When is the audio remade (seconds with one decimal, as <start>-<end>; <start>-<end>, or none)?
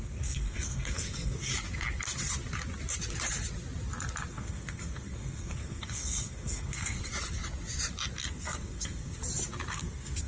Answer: 0.0-1.5; 4.3-7.1; 8.2-9.2; 9.7-10.3